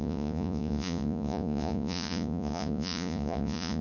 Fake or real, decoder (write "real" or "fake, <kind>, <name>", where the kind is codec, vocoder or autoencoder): fake, vocoder, Vocos